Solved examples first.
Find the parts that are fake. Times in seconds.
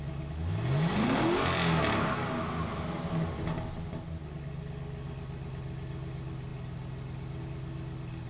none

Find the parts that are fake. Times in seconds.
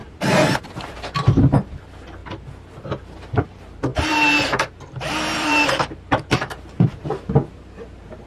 0.0-2.2 (vocoder, BigVGAN v2); 3.2-8.3